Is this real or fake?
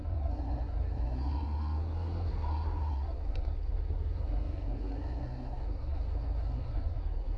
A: fake